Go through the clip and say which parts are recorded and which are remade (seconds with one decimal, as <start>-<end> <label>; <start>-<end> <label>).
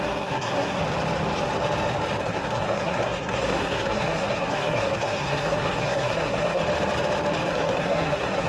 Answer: 0.0-0.8 remade; 0.8-2.2 recorded; 2.2-6.6 remade; 6.6-7.5 recorded; 7.5-8.5 remade